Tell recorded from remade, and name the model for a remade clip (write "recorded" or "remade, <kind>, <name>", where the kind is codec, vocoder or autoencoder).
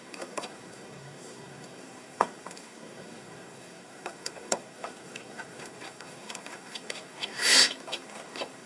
remade, codec, SNAC